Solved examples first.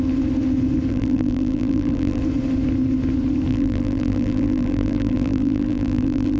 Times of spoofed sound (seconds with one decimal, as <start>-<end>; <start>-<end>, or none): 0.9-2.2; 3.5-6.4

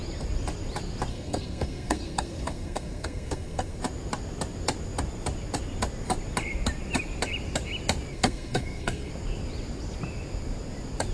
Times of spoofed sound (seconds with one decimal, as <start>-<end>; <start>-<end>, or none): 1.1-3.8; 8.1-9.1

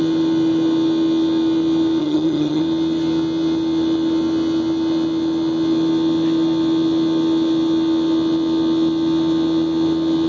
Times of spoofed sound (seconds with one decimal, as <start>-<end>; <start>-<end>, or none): 2.0-2.6

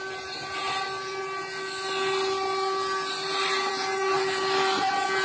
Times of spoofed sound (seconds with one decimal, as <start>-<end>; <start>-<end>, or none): none

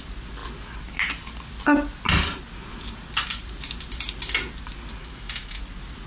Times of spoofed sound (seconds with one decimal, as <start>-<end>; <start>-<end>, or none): 5.0-5.6

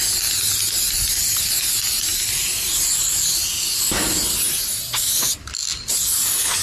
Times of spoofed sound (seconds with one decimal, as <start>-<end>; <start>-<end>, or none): none

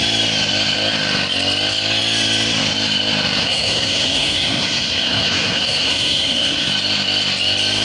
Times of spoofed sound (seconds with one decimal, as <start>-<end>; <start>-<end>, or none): 3.4-6.7